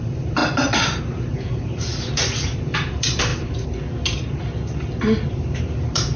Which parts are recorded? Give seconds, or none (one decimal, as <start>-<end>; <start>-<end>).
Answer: 3.3-5.3